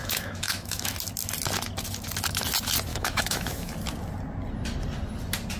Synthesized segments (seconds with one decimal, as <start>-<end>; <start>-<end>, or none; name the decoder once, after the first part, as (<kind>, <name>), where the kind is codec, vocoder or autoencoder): 0.0-0.9 (autoencoder, DAC-VAE); 2.9-3.7